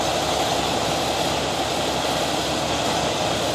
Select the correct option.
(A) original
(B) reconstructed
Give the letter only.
A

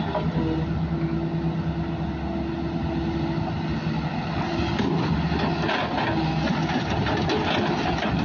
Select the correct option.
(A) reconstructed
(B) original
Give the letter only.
B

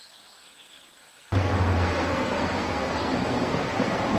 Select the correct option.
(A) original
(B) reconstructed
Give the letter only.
B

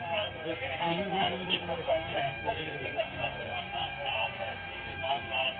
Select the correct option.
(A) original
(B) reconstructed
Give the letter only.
B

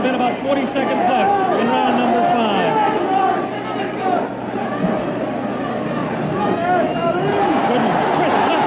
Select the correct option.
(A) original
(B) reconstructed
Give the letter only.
A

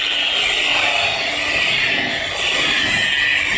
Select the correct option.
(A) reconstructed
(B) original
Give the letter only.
B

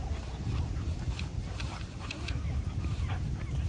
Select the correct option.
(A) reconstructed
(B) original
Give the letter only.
B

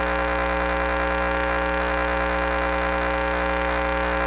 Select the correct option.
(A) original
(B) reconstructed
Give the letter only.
A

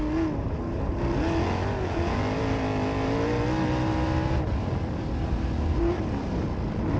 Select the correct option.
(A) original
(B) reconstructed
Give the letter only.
A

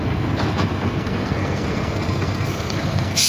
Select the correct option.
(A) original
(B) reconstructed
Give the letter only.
B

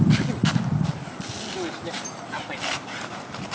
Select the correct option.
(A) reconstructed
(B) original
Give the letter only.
B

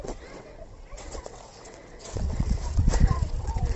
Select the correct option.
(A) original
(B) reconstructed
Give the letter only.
B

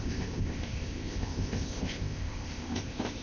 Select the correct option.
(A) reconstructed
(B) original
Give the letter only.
A